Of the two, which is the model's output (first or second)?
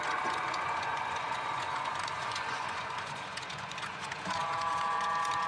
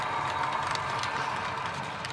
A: first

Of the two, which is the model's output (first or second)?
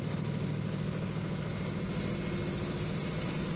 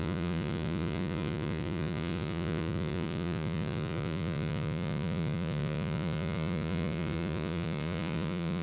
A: second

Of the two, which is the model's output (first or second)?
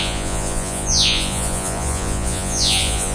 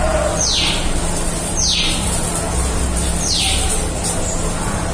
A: first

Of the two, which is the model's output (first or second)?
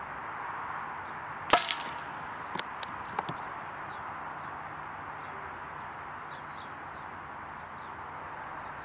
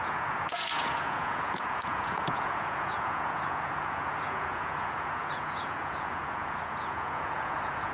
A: second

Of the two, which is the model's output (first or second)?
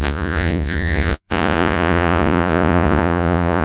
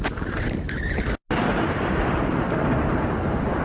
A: first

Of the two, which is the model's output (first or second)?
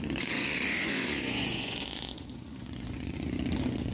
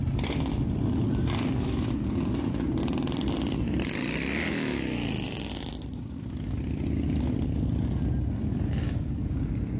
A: first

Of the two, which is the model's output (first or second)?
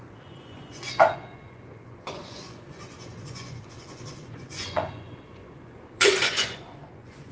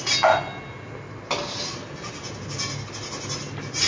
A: first